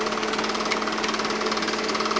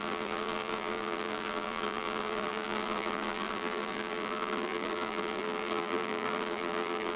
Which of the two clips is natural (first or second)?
first